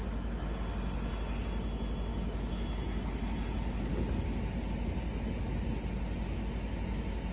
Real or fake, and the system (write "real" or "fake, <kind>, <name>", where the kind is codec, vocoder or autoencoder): real